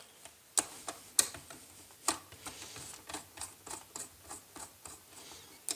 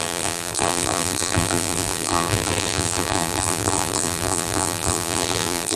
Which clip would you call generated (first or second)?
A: second